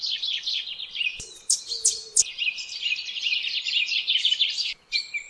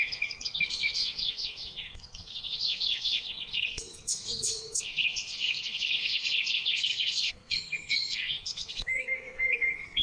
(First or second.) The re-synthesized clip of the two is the second